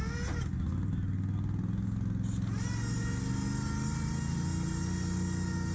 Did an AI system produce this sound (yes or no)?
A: no